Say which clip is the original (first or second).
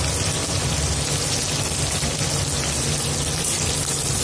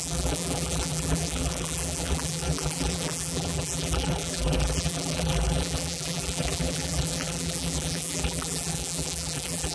first